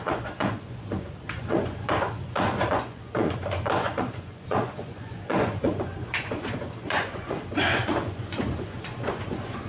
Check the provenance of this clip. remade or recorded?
remade